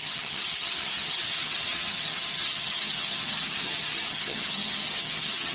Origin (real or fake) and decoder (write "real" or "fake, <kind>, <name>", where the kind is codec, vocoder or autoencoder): fake, vocoder, HiFi-GAN